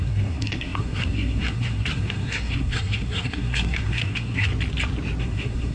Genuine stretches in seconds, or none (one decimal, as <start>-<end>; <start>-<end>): 4.5-5.2